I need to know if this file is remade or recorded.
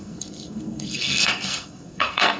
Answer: remade